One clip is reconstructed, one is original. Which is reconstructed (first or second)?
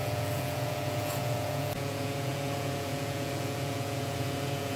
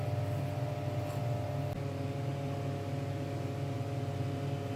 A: first